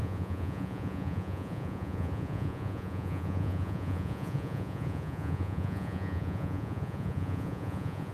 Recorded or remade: remade